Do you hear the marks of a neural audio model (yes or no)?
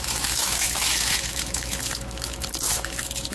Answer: yes